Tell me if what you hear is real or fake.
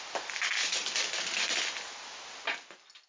real